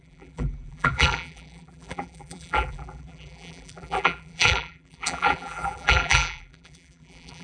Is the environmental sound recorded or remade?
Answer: remade